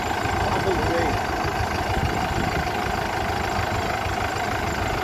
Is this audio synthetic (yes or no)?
no